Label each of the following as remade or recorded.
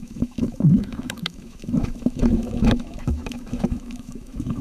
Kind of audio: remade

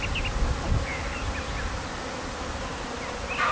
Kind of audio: recorded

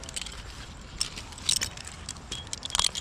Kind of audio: recorded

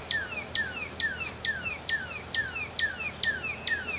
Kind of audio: recorded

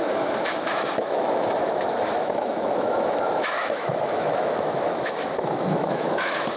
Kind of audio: remade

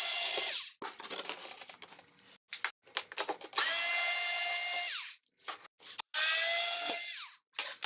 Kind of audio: recorded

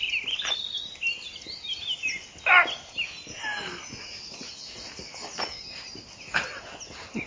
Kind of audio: recorded